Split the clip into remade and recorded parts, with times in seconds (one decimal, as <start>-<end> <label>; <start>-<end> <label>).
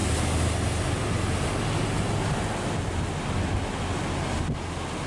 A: 0.0-5.1 recorded